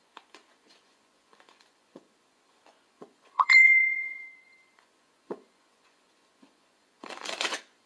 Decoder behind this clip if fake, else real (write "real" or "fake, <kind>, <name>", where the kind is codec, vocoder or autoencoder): fake, vocoder, Vocos